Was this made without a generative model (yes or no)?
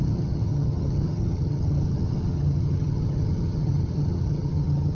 no